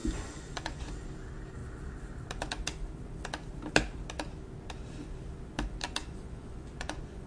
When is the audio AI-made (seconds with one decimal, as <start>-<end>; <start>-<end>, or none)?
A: 0.0-0.9; 6.0-7.3

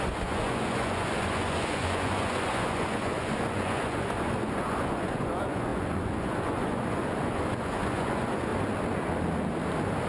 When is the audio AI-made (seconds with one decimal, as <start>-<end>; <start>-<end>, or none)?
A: 0.0-8.5